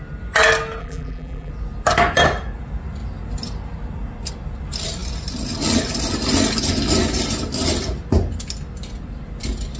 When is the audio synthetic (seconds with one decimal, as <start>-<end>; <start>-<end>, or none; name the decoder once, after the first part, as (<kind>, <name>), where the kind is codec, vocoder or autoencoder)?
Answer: 0.8-1.5 (vocoder, BigVGAN v2)